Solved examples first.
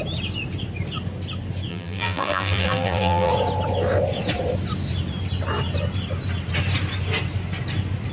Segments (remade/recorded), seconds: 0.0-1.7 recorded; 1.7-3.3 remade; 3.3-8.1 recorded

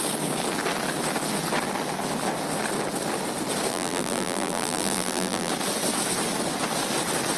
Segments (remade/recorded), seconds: 0.0-3.7 recorded; 3.7-5.5 remade; 5.5-7.4 recorded

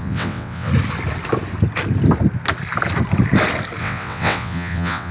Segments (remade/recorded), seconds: 0.0-0.7 remade; 0.7-3.8 recorded; 3.8-5.1 remade

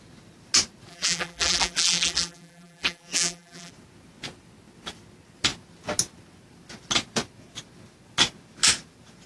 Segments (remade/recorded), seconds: 0.0-0.9 recorded; 0.9-3.7 remade; 3.7-9.3 recorded

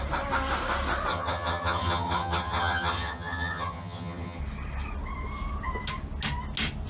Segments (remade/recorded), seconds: 0.0-1.1 recorded; 1.1-4.4 remade; 4.4-6.9 recorded

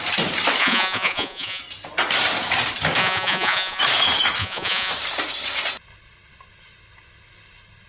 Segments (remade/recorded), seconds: 0.0-0.6 recorded; 0.6-1.6 remade; 1.6-3.0 recorded; 3.0-3.8 remade; 3.8-4.4 recorded; 4.4-4.9 remade; 4.9-7.9 recorded